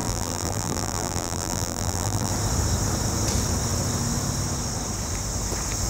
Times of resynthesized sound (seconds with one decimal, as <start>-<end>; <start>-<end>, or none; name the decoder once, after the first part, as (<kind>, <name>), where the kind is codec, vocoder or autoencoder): 0.0-2.3 (vocoder, BigVGAN v2)